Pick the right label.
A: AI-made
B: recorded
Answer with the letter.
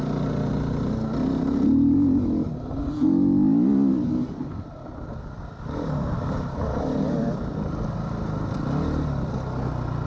B